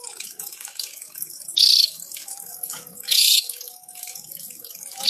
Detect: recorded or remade remade